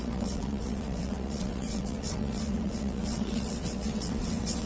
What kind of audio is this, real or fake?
fake